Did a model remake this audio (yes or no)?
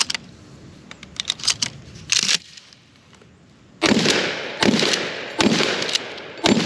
no